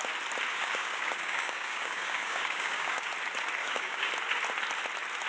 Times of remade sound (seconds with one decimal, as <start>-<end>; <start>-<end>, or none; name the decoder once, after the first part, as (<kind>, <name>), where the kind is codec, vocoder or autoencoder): 0.5-3.1 (codec, DAC); 3.6-4.1